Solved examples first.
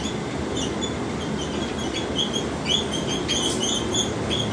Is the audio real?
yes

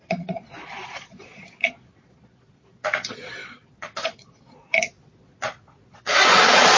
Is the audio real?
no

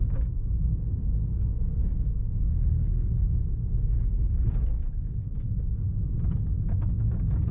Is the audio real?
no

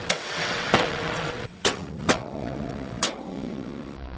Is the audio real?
no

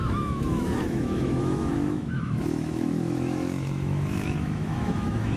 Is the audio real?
no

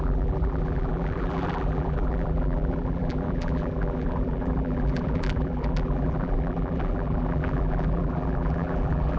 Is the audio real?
no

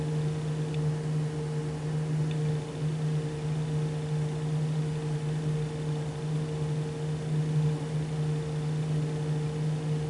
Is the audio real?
yes